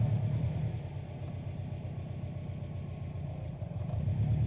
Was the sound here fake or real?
real